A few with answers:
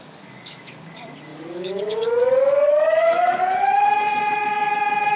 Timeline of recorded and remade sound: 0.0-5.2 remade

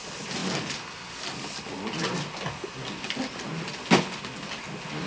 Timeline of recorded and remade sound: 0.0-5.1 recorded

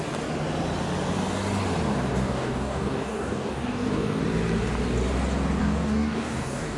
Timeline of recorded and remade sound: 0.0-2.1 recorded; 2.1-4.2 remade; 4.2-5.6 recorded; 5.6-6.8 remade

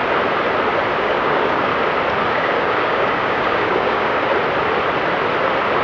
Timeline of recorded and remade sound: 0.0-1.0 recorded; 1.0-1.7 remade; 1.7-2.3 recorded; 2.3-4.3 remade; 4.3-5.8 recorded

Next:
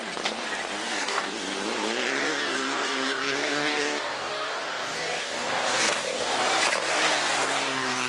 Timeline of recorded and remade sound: 0.0-0.7 recorded; 0.7-1.3 remade; 1.3-2.2 recorded; 2.2-6.4 remade; 6.4-6.9 recorded; 6.9-8.1 remade

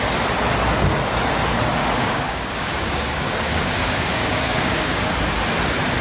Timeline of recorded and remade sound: 0.0-1.8 recorded; 1.8-5.1 remade; 5.1-6.0 recorded

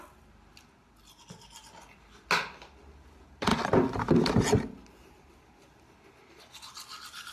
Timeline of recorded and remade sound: 0.0-7.3 recorded

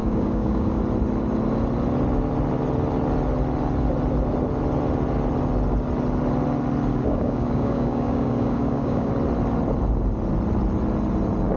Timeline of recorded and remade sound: 0.0-0.8 remade; 0.8-6.9 recorded; 6.9-9.1 remade; 9.1-11.6 recorded